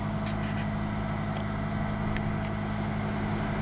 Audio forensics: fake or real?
real